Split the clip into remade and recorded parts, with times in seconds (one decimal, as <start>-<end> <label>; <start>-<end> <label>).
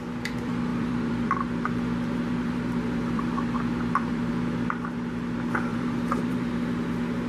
0.0-0.7 recorded; 0.7-4.3 remade; 4.3-5.7 recorded; 5.7-6.7 remade; 6.7-7.3 recorded